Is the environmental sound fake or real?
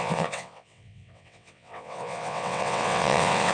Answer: fake